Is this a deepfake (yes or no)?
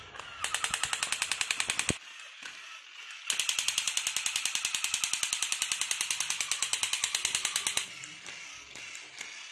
no